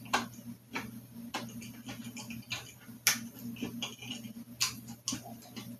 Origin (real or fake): real